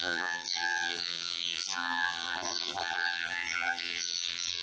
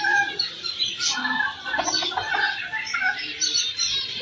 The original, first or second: second